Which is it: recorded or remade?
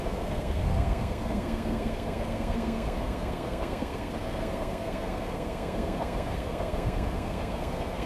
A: remade